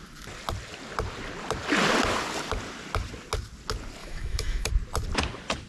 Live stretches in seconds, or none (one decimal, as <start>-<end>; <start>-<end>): 0.0-4.0; 4.7-5.7